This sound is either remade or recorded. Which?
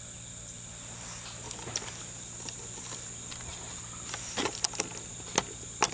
recorded